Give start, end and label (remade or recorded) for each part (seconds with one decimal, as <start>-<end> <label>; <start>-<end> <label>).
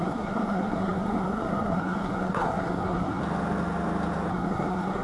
0.0-3.2 remade; 3.2-4.3 recorded; 4.3-5.0 remade